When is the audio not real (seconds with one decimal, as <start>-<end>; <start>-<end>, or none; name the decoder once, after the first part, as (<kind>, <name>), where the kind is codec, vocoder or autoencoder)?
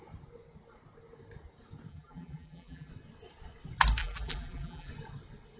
1.9-2.9 (vocoder, BigVGAN v2); 4.0-4.9